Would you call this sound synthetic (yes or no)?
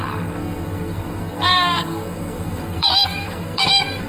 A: yes